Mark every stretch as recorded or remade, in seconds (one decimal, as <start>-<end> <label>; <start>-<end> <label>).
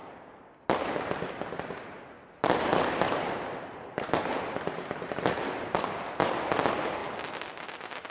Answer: 0.0-0.5 remade; 0.5-2.7 recorded; 2.7-3.3 remade; 3.3-8.1 recorded